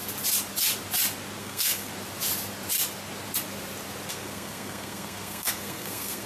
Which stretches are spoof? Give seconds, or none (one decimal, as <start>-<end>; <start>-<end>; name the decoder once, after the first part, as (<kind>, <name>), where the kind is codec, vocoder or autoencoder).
1.4-1.9 (codec, SNAC); 4.1-6.3